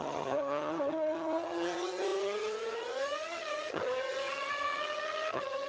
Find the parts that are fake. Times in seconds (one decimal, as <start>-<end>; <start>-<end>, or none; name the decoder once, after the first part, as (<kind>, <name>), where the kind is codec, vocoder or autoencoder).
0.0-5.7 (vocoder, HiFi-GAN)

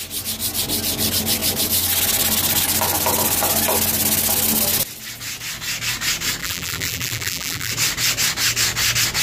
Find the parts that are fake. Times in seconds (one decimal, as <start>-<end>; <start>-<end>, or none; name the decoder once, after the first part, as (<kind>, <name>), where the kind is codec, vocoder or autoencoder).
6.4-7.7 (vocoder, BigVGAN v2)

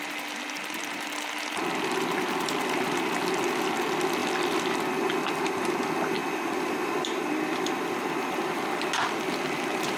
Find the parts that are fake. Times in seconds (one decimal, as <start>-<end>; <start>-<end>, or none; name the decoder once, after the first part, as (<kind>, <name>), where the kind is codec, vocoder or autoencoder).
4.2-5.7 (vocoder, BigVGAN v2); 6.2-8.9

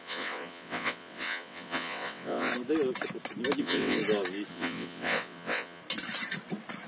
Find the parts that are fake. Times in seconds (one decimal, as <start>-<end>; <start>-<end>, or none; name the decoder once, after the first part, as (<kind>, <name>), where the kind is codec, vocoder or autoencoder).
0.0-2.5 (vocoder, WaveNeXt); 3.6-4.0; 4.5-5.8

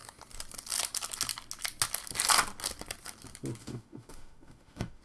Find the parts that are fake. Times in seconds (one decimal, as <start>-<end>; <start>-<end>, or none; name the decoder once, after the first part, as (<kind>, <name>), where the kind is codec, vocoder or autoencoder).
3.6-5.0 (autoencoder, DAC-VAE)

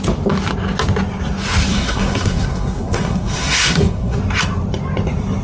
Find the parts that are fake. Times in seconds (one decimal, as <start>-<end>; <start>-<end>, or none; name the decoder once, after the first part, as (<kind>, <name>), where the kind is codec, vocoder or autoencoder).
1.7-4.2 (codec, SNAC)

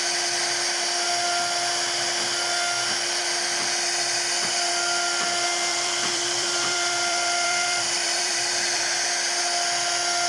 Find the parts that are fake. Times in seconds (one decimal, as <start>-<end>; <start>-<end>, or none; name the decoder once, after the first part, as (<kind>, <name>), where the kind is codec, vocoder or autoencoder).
5.7-8.8 (vocoder, BigVGAN v2)

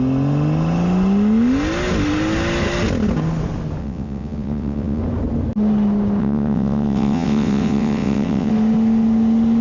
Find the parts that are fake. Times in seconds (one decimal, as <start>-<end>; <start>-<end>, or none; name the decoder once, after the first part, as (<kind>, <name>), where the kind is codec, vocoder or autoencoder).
3.8-5.0 (vocoder, WaveNeXt); 6.2-8.5